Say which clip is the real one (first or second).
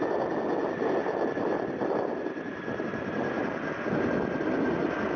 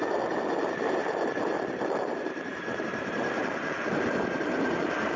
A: first